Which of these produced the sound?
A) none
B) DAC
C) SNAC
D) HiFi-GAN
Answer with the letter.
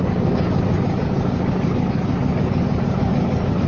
B